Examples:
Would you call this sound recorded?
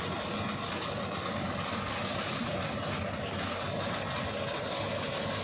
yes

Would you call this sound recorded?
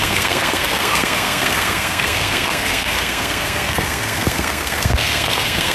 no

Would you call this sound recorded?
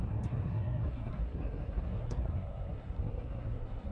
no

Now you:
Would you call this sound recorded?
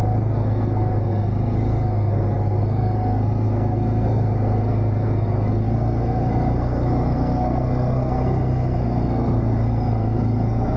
no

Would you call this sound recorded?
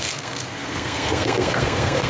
no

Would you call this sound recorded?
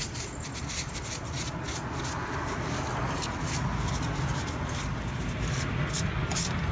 yes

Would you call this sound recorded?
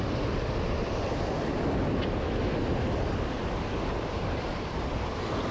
yes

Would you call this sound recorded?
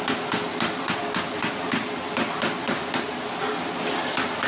yes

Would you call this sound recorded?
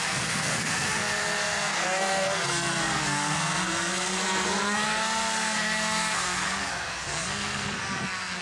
no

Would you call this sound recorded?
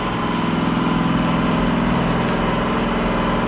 yes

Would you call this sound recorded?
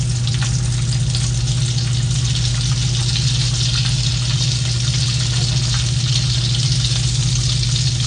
yes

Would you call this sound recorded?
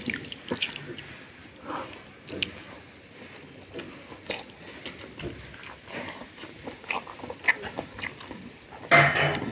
yes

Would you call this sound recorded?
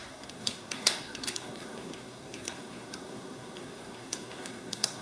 no